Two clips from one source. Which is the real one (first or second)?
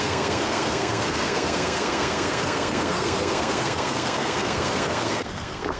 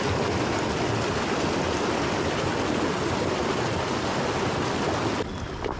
second